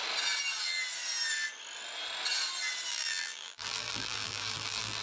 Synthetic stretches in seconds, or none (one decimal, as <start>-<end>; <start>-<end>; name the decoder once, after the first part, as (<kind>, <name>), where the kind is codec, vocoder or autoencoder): 2.9-5.0 (vocoder, BigVGAN v2)